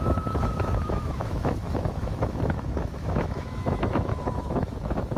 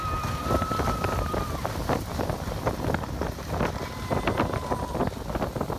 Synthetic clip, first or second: first